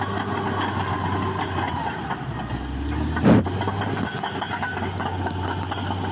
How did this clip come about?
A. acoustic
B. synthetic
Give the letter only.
A